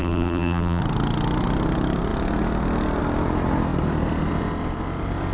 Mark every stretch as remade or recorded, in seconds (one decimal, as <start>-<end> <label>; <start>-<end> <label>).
0.0-0.8 remade; 0.8-5.3 recorded